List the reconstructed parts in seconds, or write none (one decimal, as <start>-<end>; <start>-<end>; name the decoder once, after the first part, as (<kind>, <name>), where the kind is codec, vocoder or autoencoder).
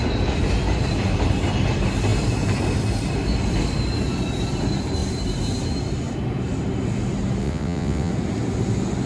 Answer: 7.4-8.1 (vocoder, WaveNeXt)